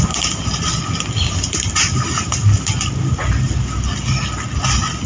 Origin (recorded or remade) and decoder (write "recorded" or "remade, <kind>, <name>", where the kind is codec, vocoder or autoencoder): recorded